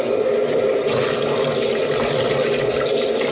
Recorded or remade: recorded